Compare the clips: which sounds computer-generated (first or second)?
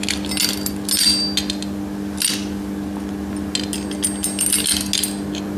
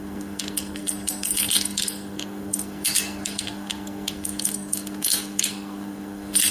second